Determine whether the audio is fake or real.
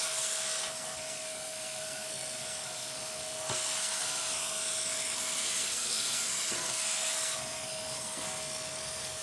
fake